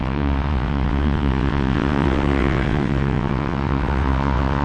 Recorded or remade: remade